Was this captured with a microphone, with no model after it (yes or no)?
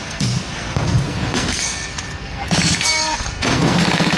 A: no